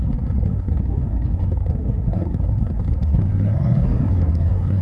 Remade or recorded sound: remade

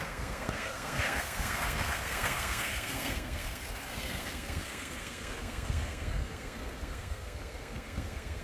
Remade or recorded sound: remade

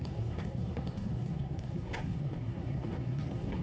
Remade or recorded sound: remade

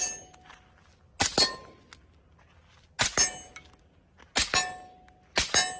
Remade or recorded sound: recorded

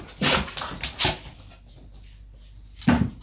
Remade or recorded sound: recorded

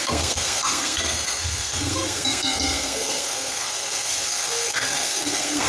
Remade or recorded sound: remade